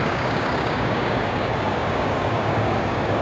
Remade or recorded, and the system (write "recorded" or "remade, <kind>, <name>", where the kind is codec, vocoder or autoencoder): remade, codec, DAC